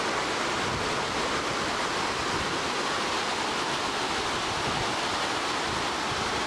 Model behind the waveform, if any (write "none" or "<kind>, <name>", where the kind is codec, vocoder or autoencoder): none